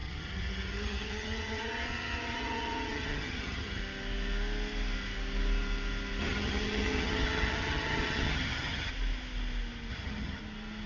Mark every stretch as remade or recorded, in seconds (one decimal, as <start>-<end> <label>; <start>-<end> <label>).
0.0-3.8 remade; 3.8-6.2 recorded; 6.2-8.9 remade; 8.9-9.9 recorded; 9.9-10.4 remade; 10.4-10.9 recorded